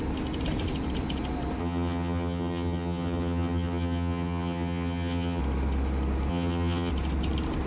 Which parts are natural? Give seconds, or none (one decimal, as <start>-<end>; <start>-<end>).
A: 0.0-1.6; 5.4-6.3; 6.9-7.7